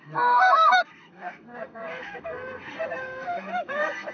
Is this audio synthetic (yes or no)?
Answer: yes